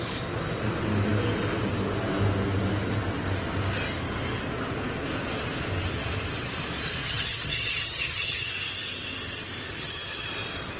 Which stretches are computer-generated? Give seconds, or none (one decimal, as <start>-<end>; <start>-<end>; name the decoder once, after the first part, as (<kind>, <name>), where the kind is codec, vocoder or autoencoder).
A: 7.0-8.5 (vocoder, HiFi-GAN); 9.7-10.3